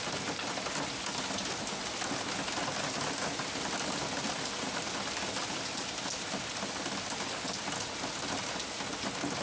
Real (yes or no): yes